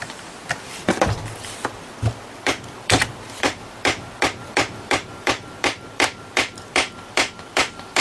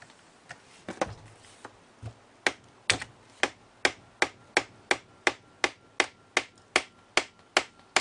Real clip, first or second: second